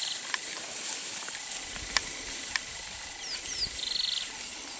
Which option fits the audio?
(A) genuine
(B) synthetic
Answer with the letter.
A